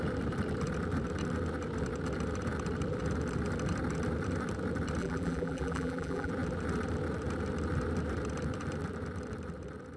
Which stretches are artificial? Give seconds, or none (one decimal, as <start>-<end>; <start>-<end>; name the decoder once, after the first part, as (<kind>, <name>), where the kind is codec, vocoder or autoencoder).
5.0-6.3 (vocoder, BigVGAN v2)

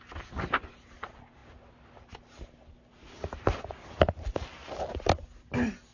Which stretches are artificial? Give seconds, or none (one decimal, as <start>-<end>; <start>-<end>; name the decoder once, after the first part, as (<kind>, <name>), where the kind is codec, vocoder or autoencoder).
none

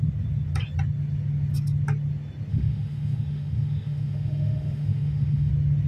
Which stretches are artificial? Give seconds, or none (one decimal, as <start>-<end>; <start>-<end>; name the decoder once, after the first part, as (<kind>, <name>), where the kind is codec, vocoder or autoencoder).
2.5-5.5 (autoencoder, DAC-VAE)

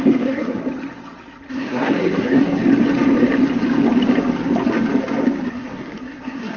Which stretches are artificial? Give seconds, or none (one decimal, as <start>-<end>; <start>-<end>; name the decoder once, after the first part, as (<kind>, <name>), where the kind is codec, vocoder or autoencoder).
0.0-0.6 (codec, SNAC); 1.5-2.6; 5.5-6.6

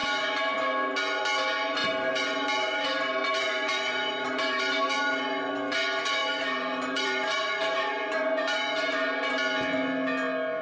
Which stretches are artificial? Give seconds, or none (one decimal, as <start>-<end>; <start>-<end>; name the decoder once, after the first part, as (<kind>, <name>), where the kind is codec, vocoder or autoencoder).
1.8-5.5 (vocoder, BigVGAN v2); 6.2-9.3